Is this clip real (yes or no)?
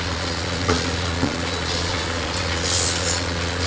no